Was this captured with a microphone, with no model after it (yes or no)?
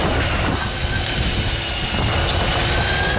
yes